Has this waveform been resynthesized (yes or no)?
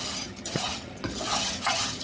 yes